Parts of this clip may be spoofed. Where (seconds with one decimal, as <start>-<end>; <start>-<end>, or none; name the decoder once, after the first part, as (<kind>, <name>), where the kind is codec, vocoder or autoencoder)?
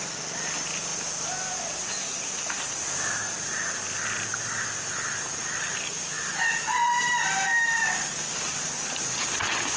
5.4-8.6 (vocoder, BigVGAN v2)